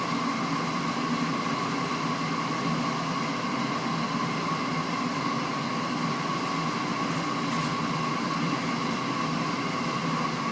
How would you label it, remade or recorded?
recorded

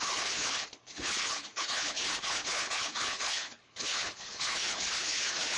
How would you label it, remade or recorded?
remade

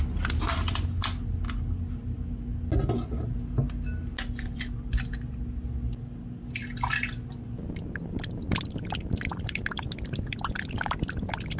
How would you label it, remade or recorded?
recorded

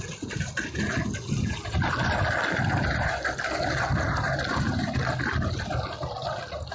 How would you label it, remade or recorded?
recorded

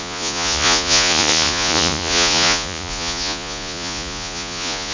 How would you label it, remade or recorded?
remade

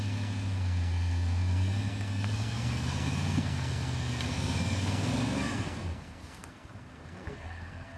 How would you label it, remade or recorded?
remade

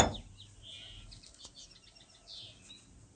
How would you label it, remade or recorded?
recorded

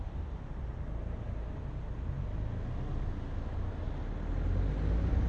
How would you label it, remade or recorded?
recorded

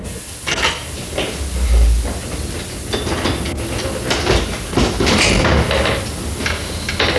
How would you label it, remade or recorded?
recorded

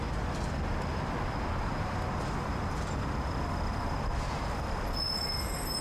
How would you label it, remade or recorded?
recorded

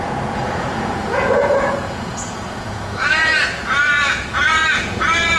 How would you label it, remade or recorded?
remade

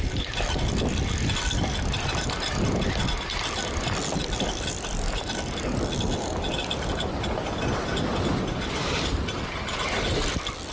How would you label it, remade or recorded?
recorded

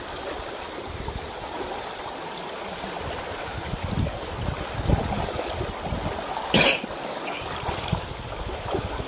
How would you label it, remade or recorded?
recorded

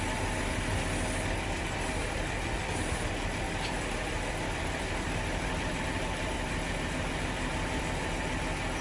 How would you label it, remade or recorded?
remade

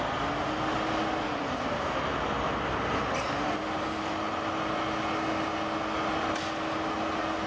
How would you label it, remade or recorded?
recorded